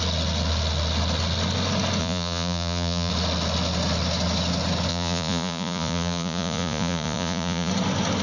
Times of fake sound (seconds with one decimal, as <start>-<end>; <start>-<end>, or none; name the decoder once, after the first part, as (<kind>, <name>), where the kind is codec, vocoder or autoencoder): 2.0-3.1 (vocoder, Vocos); 4.9-7.7